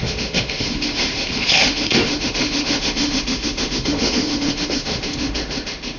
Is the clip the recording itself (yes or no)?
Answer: no